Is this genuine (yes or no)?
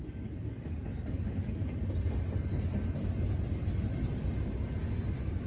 yes